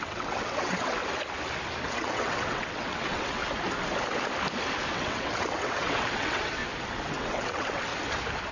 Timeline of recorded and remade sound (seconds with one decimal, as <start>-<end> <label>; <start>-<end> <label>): 0.0-1.0 remade; 1.0-1.9 recorded; 1.9-3.4 remade; 3.4-4.9 recorded; 4.9-6.6 remade; 6.6-7.1 recorded; 7.1-7.9 remade; 7.9-8.5 recorded